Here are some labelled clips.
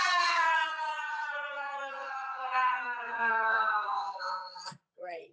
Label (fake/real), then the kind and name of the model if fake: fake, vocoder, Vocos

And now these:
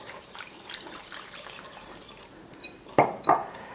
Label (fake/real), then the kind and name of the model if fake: fake, vocoder, BigVGAN v2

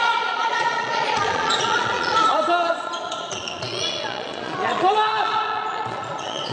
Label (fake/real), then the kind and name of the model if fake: fake, vocoder, Vocos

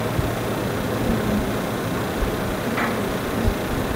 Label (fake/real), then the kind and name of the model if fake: real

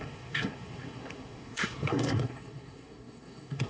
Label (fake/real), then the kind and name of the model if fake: fake, codec, SNAC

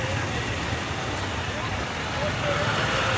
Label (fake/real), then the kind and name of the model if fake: real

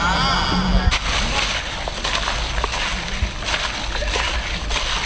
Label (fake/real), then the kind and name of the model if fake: real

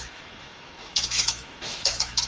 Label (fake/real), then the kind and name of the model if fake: fake, autoencoder, DAC-VAE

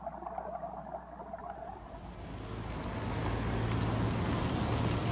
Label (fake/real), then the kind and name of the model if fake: real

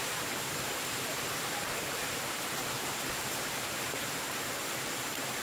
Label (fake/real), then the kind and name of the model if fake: fake, vocoder, BigVGAN v2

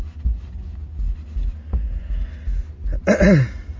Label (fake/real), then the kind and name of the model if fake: real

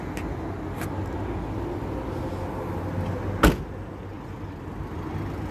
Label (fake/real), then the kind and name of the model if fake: real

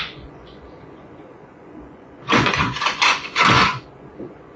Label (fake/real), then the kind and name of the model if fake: fake, vocoder, Vocos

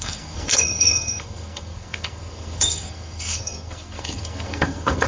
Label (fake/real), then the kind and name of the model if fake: fake, codec, SNAC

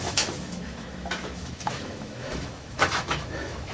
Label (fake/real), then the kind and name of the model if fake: fake, autoencoder, DAC-VAE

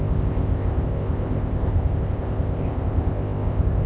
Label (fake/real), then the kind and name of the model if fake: fake, codec, ZipCodec